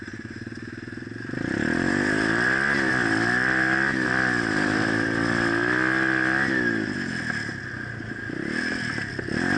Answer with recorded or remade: recorded